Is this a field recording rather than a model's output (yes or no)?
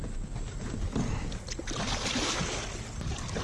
yes